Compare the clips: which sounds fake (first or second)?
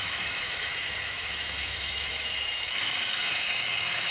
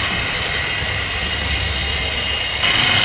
first